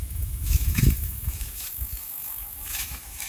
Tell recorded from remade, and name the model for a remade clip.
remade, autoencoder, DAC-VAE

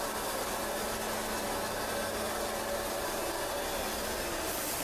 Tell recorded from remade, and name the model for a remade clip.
recorded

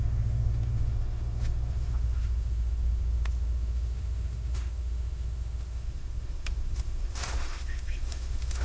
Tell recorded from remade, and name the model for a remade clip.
remade, autoencoder, DAC-VAE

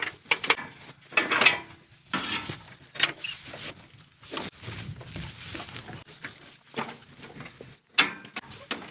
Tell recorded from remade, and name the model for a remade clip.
recorded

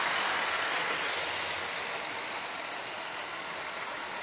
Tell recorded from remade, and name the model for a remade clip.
recorded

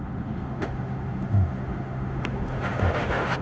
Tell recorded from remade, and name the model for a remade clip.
remade, autoencoder, DAC-VAE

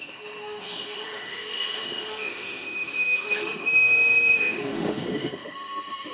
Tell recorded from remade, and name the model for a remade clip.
remade, autoencoder, DAC-VAE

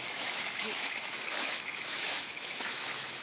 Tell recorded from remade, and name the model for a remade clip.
remade, autoencoder, DAC-VAE